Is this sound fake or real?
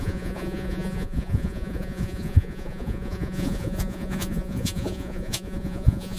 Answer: fake